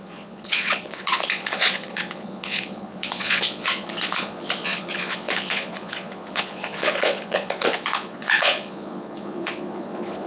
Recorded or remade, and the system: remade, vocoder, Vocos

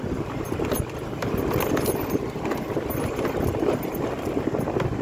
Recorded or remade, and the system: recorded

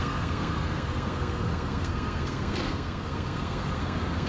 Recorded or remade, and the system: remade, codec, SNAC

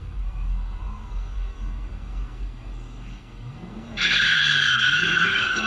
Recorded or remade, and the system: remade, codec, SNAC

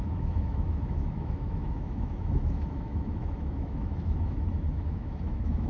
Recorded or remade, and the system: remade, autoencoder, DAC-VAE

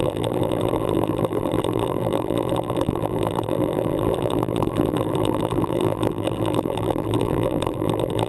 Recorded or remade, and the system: remade, vocoder, BigVGAN v2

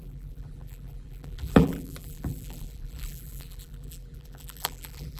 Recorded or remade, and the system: remade, vocoder, BigVGAN v2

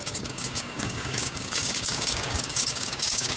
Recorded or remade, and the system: remade, codec, DAC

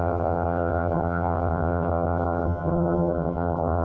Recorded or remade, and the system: remade, vocoder, HiFi-GAN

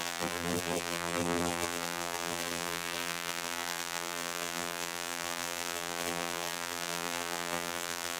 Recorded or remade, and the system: remade, vocoder, BigVGAN v2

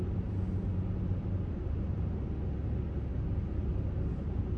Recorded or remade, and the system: recorded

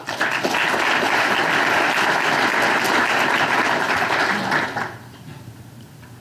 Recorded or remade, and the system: recorded